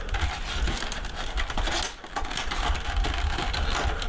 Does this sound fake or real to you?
real